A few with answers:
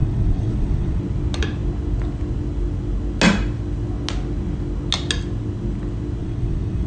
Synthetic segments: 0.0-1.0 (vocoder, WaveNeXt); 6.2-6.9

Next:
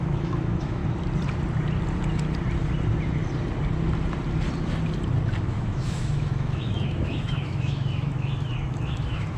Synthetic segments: 0.0-0.8 (autoencoder, DAC-VAE); 5.4-9.4

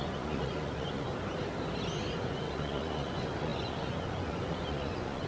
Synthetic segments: 0.0-1.1 (vocoder, Vocos); 2.2-5.3

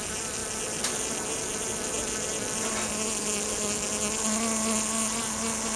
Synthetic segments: none

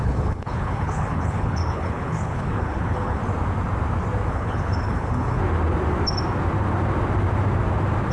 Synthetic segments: 0.0-3.2 (codec, HILCodec); 4.3-5.4

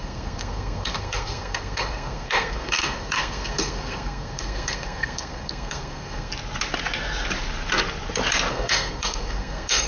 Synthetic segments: 0.0-6.3 (codec, SNAC); 8.5-9.9

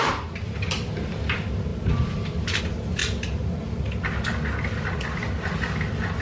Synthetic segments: none